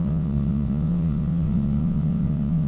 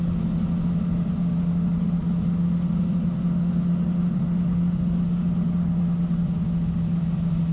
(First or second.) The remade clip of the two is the first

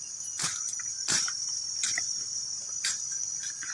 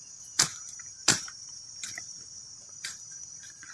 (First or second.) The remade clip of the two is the second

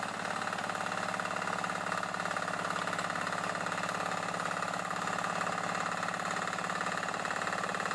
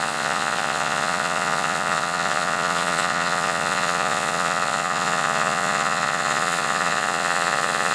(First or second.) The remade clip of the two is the second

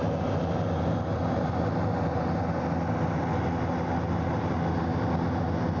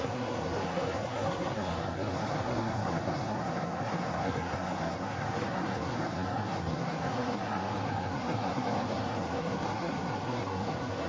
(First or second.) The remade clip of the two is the second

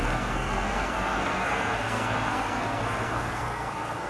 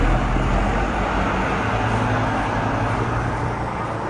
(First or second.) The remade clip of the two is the first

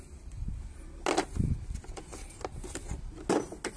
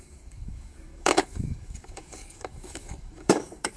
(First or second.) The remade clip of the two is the second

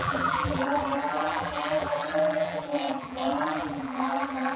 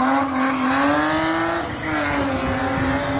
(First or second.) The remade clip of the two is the first